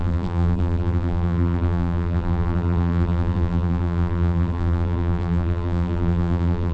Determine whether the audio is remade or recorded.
remade